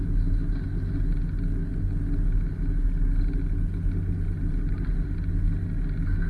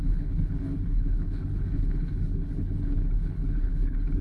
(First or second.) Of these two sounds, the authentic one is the first